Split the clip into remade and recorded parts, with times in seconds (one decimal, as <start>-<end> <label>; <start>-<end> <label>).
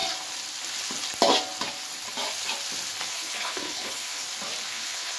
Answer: 0.0-3.1 recorded; 3.1-4.2 remade; 4.2-4.7 recorded; 4.7-5.2 remade